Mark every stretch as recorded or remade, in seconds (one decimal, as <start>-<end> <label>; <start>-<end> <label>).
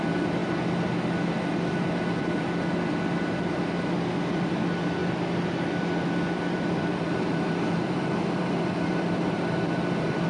0.0-0.4 remade; 0.4-4.3 recorded; 4.3-5.0 remade; 5.0-6.8 recorded; 6.8-10.3 remade